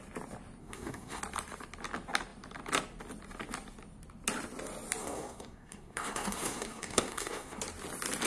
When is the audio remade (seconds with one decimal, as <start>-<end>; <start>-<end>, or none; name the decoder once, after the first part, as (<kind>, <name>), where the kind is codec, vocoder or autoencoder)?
0.6-1.2 (codec, SNAC); 5.0-7.6